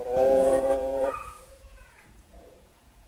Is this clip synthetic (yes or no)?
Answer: yes